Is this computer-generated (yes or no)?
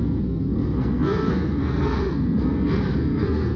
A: yes